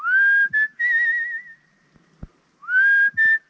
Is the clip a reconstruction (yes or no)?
no